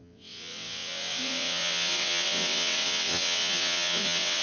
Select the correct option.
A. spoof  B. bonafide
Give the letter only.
A